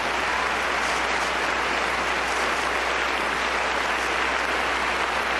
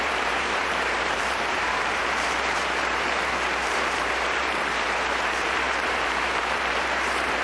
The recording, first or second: first